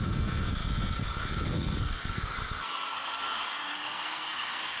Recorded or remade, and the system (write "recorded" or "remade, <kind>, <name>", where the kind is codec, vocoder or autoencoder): remade, codec, SNAC